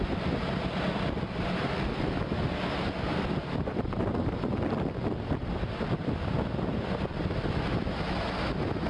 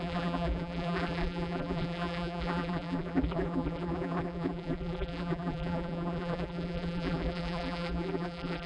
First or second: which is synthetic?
second